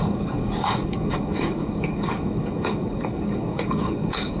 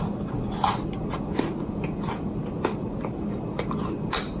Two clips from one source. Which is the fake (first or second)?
first